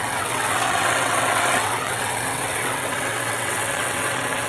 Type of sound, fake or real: fake